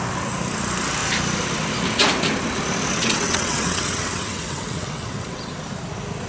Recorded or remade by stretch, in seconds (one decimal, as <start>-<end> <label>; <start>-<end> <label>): 0.0-2.9 recorded; 2.9-5.5 remade; 5.5-6.3 recorded